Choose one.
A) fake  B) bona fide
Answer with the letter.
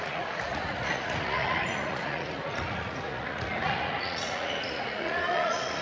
A